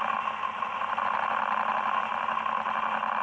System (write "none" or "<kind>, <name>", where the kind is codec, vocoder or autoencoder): none